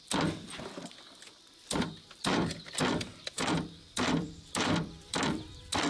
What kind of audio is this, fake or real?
fake